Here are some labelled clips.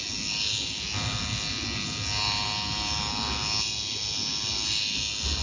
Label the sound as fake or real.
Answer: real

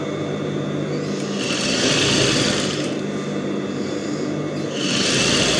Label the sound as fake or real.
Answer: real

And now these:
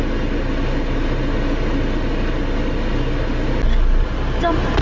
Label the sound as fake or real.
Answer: real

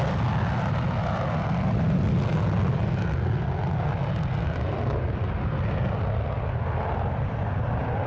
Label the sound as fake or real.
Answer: real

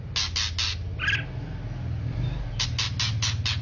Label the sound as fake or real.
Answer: real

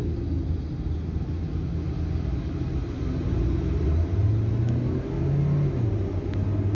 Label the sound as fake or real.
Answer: real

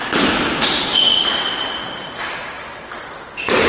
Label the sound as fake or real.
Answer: real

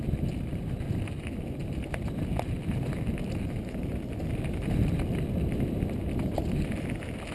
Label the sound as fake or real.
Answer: real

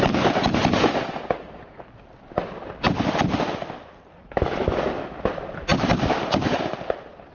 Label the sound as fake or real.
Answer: fake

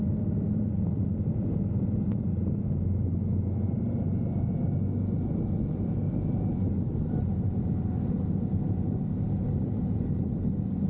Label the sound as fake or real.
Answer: real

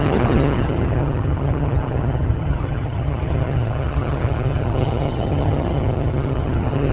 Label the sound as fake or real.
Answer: fake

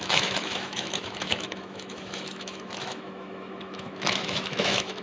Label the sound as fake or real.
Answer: fake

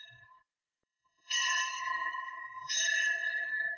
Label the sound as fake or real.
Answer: fake